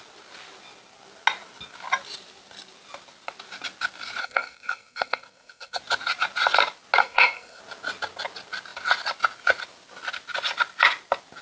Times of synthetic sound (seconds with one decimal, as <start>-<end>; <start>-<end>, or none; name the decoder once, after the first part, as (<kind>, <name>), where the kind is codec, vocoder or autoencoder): 4.2-5.8 (codec, SNAC); 7.0-7.6